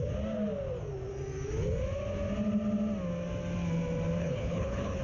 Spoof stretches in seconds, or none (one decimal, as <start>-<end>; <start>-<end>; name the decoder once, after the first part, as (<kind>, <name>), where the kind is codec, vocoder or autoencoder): 4.2-5.0 (codec, HILCodec)